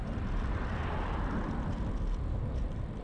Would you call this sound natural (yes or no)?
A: no